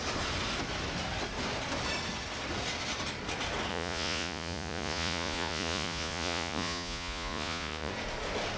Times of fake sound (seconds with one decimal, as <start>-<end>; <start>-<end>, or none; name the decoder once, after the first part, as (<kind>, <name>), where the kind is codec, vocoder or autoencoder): 3.7-7.9 (vocoder, Vocos)